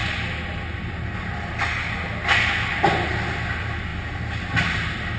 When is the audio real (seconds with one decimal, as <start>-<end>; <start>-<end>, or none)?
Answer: 0.0-5.2